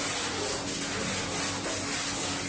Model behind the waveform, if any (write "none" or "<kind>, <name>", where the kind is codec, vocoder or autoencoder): none